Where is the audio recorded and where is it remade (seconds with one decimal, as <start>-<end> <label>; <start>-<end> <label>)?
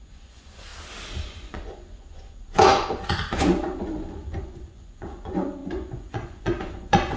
0.0-0.7 remade; 0.7-1.2 recorded; 1.2-7.2 remade